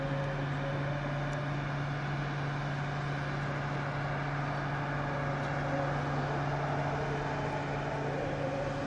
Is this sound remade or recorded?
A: recorded